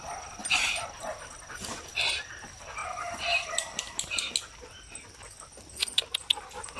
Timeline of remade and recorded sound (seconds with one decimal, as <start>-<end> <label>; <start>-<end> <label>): 0.0-0.4 recorded; 0.4-2.2 remade; 2.2-2.8 recorded; 2.8-4.3 remade; 4.3-6.8 recorded